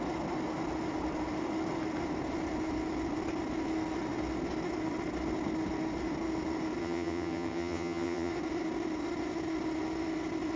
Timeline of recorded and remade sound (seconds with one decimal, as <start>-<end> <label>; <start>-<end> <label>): 0.0-6.8 recorded; 6.8-8.3 remade; 8.3-10.6 recorded